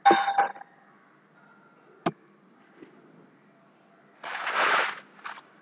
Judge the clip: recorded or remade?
recorded